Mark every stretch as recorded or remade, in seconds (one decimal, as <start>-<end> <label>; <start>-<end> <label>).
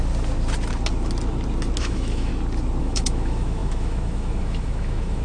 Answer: 0.0-1.8 recorded; 1.8-2.3 remade; 2.3-2.8 recorded; 2.8-5.2 remade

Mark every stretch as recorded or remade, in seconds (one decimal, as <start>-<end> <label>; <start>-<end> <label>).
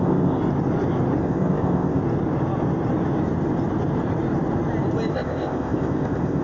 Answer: 0.0-0.4 remade; 0.4-1.2 recorded; 1.2-2.0 remade; 2.0-5.1 recorded; 5.1-6.4 remade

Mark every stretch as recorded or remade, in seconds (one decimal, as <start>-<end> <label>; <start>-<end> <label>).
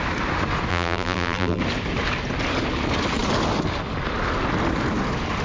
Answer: 0.0-0.7 recorded; 0.7-1.6 remade; 1.6-5.4 recorded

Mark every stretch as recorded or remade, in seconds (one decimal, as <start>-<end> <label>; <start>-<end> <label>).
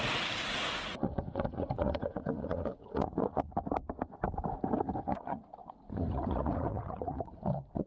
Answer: 0.0-3.5 remade; 3.5-5.0 recorded; 5.0-7.9 remade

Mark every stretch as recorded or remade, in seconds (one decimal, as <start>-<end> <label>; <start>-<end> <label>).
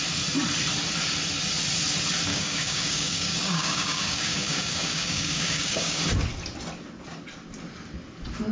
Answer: 0.0-2.3 recorded; 2.3-6.0 remade; 6.0-8.5 recorded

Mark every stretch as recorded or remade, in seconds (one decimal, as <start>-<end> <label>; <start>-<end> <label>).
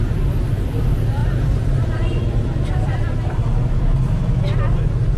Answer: 0.0-5.2 recorded